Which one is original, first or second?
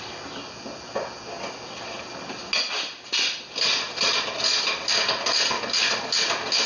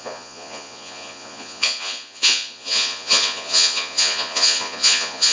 first